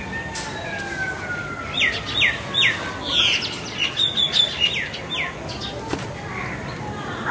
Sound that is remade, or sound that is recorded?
recorded